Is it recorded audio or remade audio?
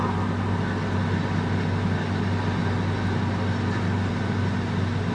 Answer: recorded